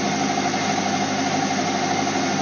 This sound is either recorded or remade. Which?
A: recorded